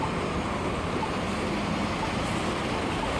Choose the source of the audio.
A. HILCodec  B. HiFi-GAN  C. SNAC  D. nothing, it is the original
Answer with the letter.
D